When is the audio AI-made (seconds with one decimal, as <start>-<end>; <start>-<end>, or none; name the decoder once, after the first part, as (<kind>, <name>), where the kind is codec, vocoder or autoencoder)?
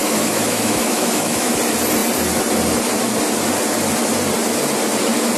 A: 0.0-1.5 (autoencoder, DAC-VAE)